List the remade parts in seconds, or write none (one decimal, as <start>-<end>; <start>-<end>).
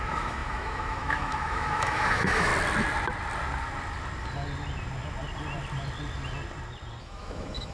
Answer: 0.0-2.5; 7.0-7.7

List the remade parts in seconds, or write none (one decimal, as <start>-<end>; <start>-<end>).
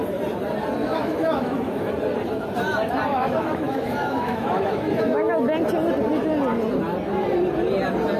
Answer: 0.8-1.9; 3.1-5.3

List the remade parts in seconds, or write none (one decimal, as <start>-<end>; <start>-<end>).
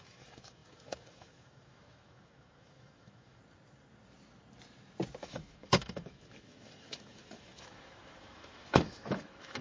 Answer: 0.0-3.4; 5.2-9.6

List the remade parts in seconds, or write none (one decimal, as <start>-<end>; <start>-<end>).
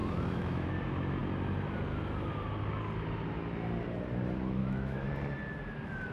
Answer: 0.0-0.7; 4.6-5.1